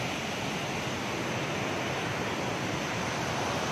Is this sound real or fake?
real